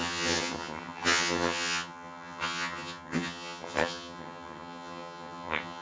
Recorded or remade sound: remade